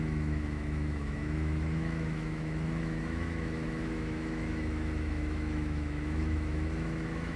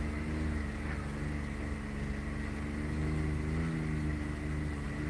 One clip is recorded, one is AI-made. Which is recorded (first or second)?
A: second